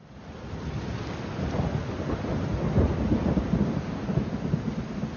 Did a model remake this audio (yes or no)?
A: no